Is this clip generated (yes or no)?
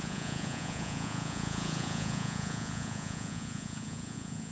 yes